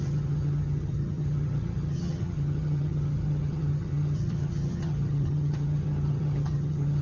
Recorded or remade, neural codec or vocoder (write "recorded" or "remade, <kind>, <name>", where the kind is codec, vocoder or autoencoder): remade, vocoder, HiFi-GAN